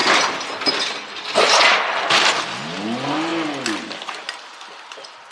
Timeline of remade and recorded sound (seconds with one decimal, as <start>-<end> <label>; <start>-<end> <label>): 0.0-5.3 recorded